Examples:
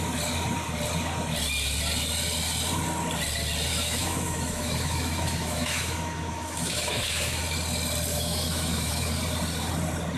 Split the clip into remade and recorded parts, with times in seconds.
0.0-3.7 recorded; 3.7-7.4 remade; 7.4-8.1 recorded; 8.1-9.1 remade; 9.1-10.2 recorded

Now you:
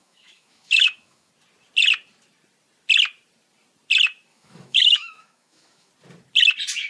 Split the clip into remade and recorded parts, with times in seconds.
0.0-1.3 remade; 1.3-4.3 recorded; 4.3-5.9 remade; 5.9-6.9 recorded

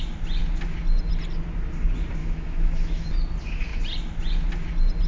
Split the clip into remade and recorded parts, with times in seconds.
0.0-2.2 recorded; 2.2-3.1 remade; 3.1-5.1 recorded

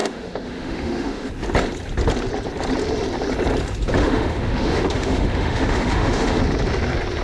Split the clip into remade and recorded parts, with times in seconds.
0.0-1.3 remade; 1.3-4.0 recorded; 4.0-6.4 remade; 6.4-7.2 recorded

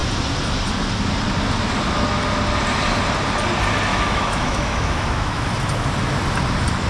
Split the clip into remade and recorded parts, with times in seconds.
0.0-3.9 recorded; 3.9-5.5 remade; 5.5-6.9 recorded

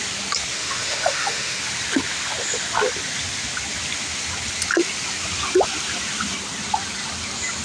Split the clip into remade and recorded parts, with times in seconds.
0.0-0.5 recorded; 0.5-1.6 remade; 1.6-7.6 recorded